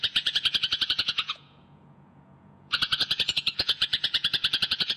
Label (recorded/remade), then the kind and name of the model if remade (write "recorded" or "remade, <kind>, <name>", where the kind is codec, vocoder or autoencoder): remade, vocoder, Vocos